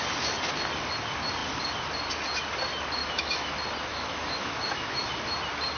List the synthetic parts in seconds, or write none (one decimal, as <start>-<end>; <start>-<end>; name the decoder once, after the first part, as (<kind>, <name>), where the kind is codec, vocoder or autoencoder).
3.0-3.5 (autoencoder, DAC-VAE); 3.9-5.1